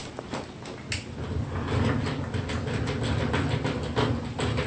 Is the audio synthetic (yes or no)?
no